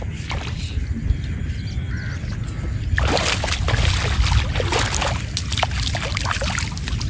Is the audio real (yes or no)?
yes